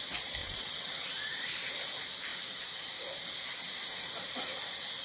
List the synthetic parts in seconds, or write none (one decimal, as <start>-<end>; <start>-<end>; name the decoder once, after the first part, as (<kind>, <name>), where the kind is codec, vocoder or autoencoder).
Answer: 0.4-1.3 (vocoder, WaveNeXt)

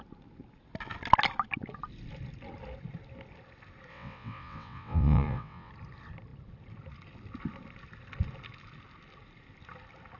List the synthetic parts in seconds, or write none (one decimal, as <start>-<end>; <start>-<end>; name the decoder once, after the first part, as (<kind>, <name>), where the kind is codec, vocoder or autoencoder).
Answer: 3.9-5.7 (vocoder, WaveNeXt)

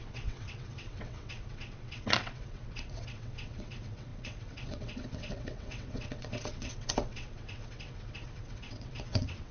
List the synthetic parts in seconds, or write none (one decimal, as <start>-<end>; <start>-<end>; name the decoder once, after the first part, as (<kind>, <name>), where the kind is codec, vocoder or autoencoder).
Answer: 0.0-9.5 (vocoder, WaveNeXt)